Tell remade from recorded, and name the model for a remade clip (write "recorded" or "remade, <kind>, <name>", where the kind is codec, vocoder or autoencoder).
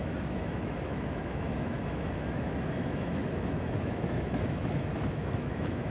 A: remade, autoencoder, DAC-VAE